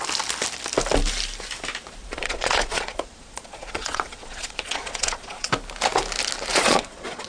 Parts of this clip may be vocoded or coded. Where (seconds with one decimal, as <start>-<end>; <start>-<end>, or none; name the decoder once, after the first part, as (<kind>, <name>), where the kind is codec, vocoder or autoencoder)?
2.0-5.5 (vocoder, Vocos); 6.5-7.3